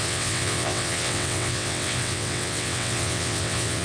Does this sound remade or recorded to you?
remade